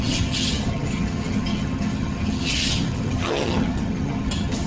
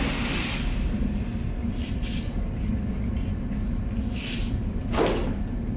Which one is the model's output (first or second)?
first